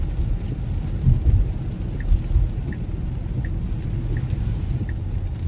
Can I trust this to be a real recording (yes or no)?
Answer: yes